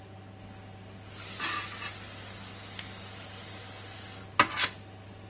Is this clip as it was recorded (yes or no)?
yes